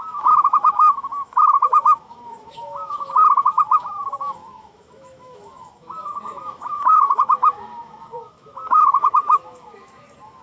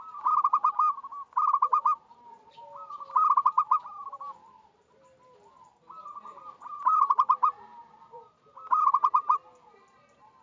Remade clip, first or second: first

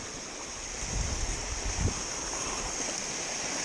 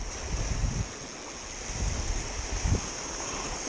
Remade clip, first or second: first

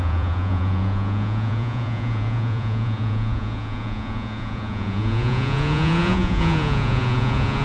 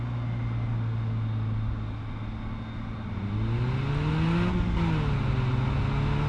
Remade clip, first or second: first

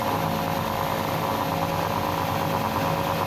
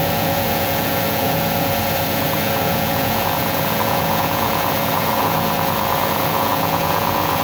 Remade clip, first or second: second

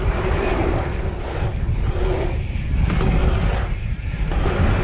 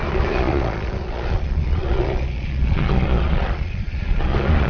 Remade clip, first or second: second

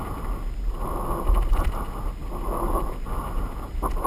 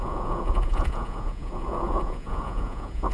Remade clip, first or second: second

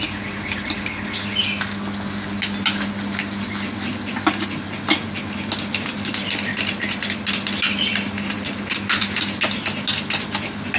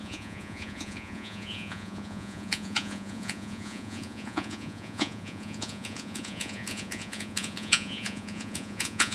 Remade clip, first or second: second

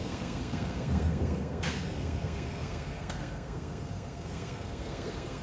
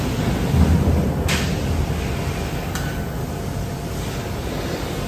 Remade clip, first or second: first